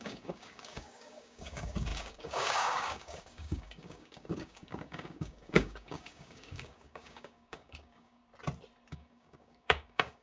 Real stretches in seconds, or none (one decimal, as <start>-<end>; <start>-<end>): 8.2-8.9